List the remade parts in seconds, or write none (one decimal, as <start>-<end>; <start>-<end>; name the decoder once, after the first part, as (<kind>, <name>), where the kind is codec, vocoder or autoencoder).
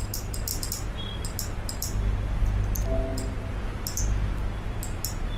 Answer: none